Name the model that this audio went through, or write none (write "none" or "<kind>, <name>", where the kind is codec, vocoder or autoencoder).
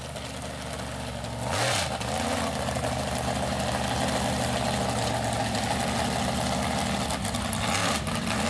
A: none